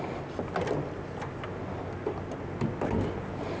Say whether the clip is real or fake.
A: real